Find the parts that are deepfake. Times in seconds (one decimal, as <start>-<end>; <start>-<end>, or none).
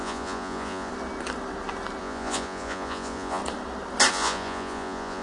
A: 0.0-0.9; 2.0-3.4; 4.1-5.2